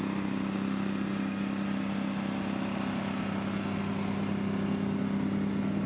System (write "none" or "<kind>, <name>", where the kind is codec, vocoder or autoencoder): none